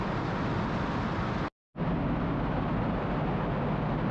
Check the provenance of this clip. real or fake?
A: real